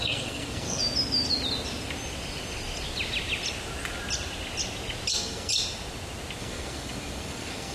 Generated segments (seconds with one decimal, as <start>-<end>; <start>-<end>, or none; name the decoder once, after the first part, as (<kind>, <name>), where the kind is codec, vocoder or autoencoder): 0.0-0.8 (codec, SNAC); 5.1-5.5; 6.4-7.7

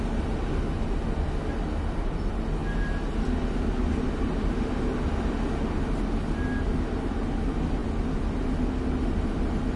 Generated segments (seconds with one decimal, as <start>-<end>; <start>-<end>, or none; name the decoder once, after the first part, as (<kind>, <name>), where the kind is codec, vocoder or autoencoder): none